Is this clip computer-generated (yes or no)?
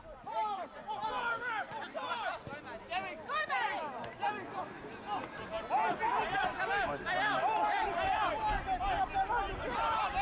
no